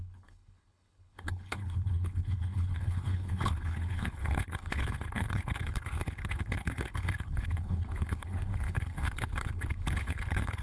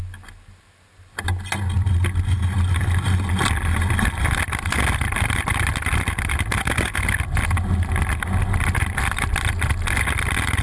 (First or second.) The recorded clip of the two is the second